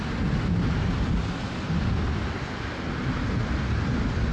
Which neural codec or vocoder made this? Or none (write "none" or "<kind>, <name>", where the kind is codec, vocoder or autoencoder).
none